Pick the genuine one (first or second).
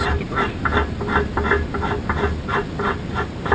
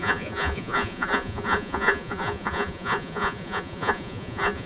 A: first